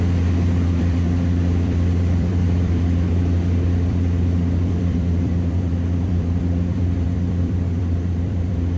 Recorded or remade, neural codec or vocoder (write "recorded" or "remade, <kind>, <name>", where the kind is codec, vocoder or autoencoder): remade, vocoder, BigVGAN v2